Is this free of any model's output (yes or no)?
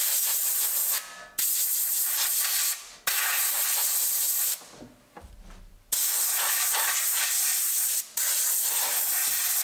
yes